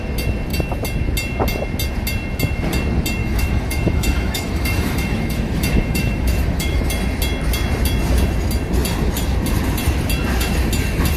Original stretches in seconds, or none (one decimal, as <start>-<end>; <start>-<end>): 0.0-3.2; 6.8-11.2